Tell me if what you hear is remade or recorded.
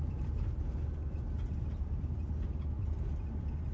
recorded